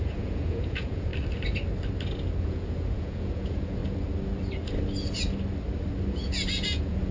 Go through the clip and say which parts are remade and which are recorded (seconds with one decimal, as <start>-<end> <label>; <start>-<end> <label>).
0.0-1.1 remade; 1.1-2.4 recorded; 2.4-3.8 remade; 3.8-6.1 recorded; 6.1-7.1 remade